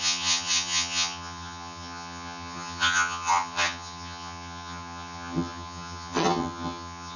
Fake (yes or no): yes